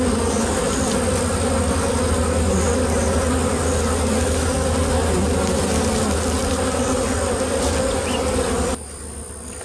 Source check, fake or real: real